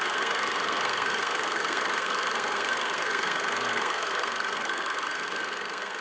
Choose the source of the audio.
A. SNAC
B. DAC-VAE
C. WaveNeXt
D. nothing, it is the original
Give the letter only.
A